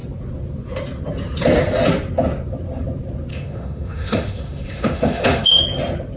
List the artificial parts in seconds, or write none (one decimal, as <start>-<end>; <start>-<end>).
3.3-5.6